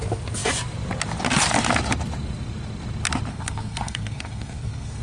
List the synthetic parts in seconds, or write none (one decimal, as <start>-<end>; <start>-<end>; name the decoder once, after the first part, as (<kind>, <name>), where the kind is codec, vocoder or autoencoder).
3.3-5.0 (codec, SNAC)